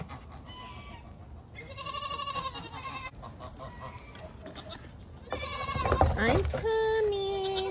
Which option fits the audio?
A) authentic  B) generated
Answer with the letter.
A